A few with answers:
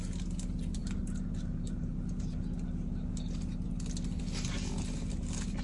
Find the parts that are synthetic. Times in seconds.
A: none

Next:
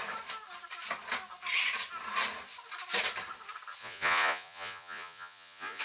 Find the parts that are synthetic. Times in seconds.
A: 3.8-5.8 (vocoder, Vocos)

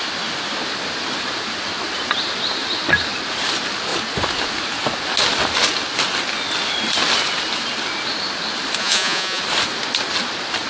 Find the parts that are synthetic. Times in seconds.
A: 8.8-9.4 (vocoder, Vocos)

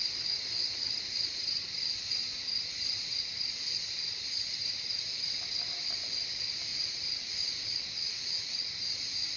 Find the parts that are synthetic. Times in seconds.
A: 6.7-8.6 (vocoder, Vocos)

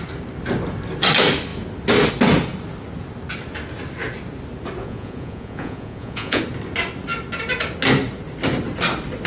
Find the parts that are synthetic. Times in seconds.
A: 4.8-6.4 (vocoder, Vocos)

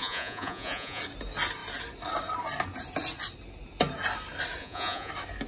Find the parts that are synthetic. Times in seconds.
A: 0.0-1.0 (vocoder, Vocos); 4.6-5.1

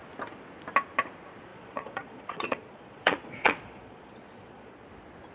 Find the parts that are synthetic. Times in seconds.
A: 1.5-4.7 (vocoder, Vocos)